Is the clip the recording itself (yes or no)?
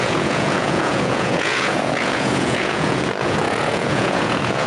no